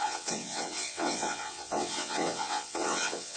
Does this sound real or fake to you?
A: fake